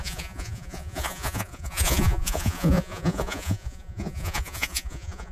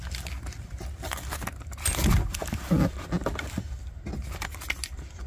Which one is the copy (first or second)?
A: first